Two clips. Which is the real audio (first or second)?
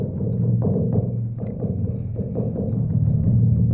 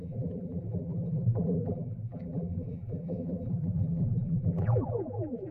first